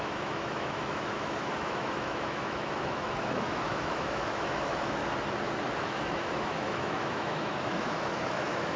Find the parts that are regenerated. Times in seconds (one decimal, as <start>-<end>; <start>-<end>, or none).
0.0-5.0; 5.8-8.8